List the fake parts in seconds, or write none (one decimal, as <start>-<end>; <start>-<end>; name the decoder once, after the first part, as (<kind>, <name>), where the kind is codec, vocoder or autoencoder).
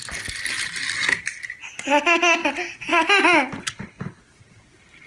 3.6-4.2 (codec, HILCodec)